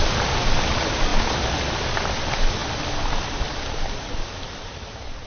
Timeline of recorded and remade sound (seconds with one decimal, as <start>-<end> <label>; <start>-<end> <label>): 0.0-1.1 remade; 1.1-1.7 recorded; 1.7-2.6 remade; 2.6-3.2 recorded; 3.2-5.3 remade